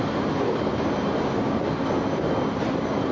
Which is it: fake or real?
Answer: real